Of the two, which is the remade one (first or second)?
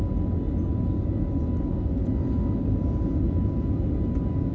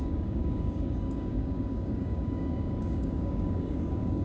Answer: second